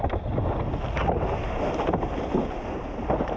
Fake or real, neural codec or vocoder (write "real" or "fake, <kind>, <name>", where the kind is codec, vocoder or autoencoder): real